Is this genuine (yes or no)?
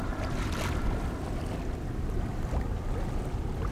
no